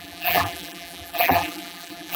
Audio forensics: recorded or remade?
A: remade